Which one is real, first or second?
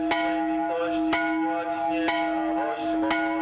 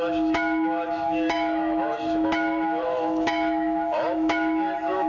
first